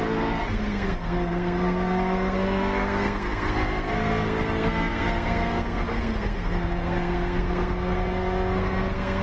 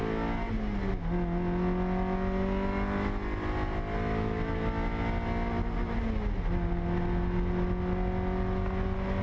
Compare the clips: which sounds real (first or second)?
second